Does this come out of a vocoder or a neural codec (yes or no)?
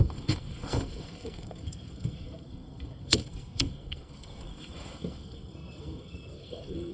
yes